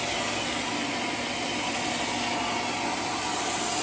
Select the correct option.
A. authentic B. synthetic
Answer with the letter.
A